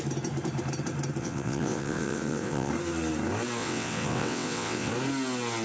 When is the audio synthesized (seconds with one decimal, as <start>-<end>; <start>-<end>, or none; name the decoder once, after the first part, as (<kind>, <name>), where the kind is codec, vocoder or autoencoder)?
1.2-2.7 (vocoder, WaveNeXt); 3.6-4.9